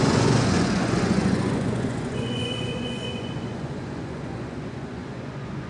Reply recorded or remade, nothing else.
remade